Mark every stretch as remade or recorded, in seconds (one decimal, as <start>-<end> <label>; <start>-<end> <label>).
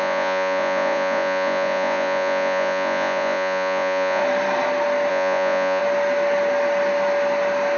0.0-4.2 remade; 4.2-5.1 recorded; 5.1-5.8 remade; 5.8-7.8 recorded